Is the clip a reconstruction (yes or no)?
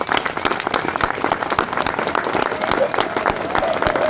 no